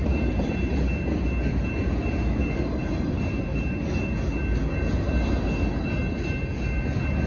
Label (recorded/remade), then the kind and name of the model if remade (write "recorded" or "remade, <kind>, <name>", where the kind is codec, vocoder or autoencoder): recorded